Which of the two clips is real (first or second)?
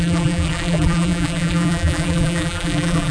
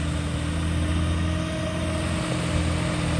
second